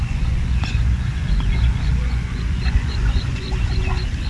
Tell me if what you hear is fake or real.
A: fake